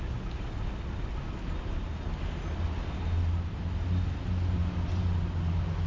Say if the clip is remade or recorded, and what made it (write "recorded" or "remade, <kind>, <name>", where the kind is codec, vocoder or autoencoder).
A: recorded